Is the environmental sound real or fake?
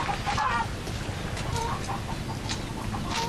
real